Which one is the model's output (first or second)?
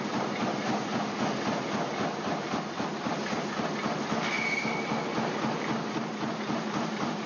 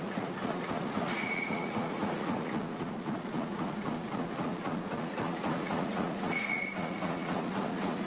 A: second